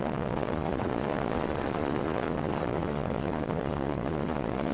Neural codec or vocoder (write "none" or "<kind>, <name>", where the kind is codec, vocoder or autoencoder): vocoder, Vocos